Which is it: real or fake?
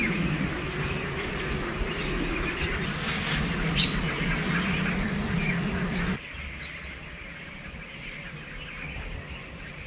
real